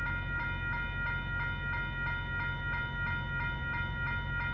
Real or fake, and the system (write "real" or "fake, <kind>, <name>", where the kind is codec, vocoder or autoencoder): real